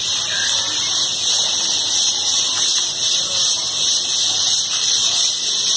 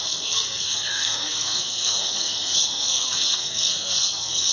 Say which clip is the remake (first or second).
second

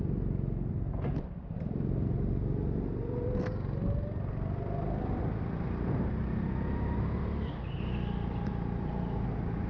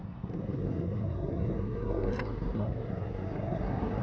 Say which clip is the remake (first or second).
second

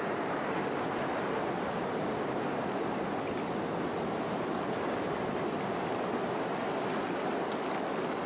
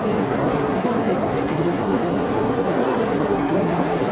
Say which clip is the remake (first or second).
second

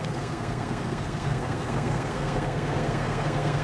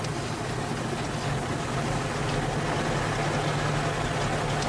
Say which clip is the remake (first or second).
first